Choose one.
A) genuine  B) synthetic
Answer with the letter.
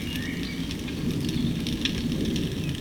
A